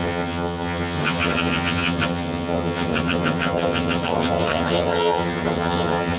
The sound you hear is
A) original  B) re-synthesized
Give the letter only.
B